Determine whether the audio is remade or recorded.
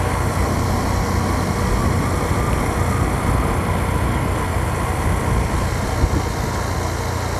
recorded